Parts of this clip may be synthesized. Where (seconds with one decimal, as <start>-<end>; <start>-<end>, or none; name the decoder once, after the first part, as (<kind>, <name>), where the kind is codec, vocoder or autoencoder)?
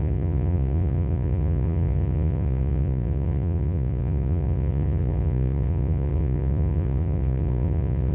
0.0-8.1 (vocoder, Vocos)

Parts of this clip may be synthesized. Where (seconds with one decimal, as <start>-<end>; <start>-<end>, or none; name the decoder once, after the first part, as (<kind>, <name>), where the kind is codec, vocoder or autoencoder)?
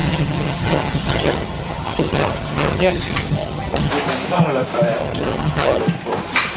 0.0-3.9 (vocoder, HiFi-GAN); 5.0-5.8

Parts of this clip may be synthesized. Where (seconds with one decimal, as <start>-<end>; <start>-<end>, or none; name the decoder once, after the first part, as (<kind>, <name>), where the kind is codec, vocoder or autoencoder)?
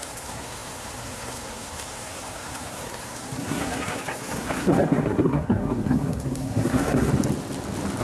0.0-7.1 (codec, SNAC)